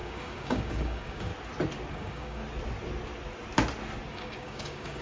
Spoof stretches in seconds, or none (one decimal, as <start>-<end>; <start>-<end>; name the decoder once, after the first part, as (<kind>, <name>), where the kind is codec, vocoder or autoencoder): 0.0-1.3 (codec, DAC); 1.9-2.4; 4.1-5.0